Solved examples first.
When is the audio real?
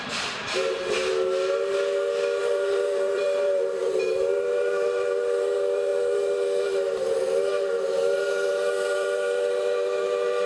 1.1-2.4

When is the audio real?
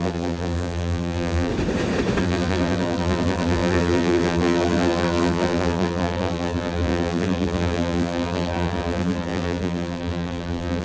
1.5-2.2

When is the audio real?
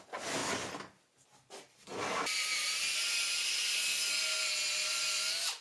0.0-5.6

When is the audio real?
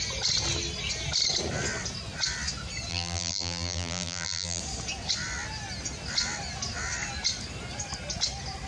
0.0-2.9; 4.6-8.7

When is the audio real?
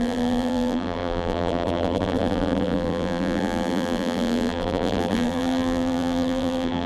none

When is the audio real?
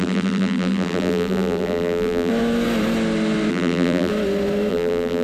2.3-3.5; 4.1-4.7